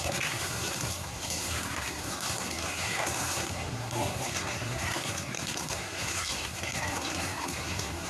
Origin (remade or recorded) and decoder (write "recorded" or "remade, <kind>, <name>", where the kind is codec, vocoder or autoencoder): remade, codec, SNAC